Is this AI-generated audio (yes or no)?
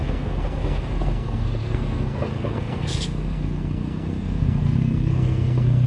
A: yes